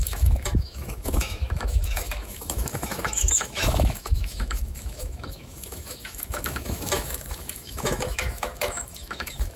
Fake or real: fake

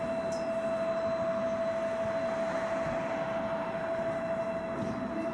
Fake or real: real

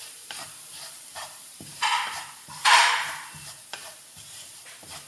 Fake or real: fake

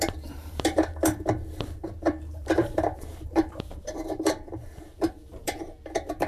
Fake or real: fake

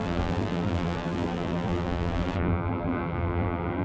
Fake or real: fake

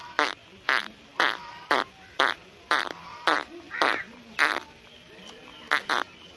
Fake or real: fake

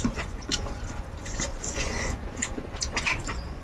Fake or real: fake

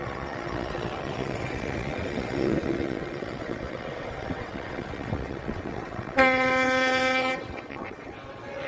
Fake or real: fake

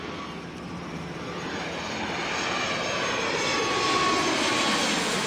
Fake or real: real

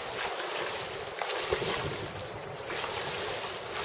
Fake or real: real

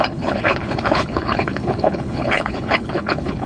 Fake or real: fake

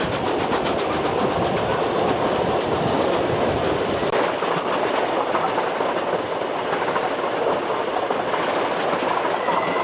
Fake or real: real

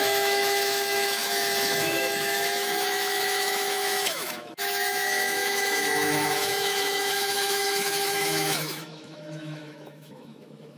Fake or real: fake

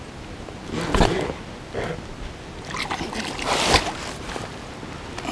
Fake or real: real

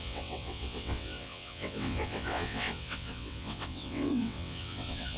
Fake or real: fake